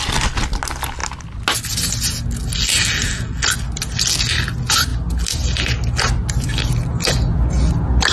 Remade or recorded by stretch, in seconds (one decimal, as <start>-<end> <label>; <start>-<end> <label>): 0.0-8.1 recorded